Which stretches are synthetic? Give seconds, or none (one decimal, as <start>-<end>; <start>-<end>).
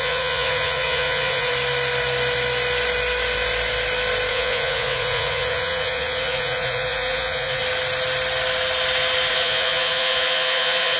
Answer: 0.0-1.5; 4.3-7.6; 9.3-11.0